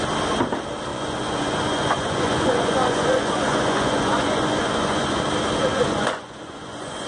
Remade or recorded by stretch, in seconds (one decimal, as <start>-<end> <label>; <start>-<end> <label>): 0.0-0.9 recorded; 0.9-5.2 remade; 5.2-5.7 recorded; 5.7-7.1 remade